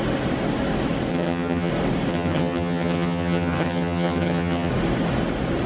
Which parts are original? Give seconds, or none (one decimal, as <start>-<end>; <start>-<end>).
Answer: 0.0-1.1; 1.7-2.1; 4.7-5.7